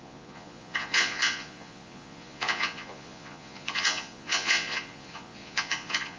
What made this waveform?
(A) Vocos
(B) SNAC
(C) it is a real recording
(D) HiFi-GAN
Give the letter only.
A